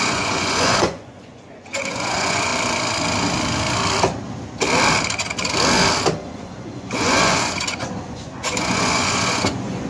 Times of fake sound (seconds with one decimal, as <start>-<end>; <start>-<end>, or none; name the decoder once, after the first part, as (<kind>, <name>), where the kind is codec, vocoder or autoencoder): 0.0-2.5 (vocoder, Vocos); 6.2-9.9